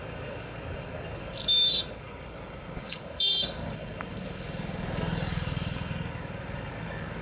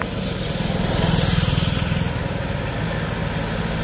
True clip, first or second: second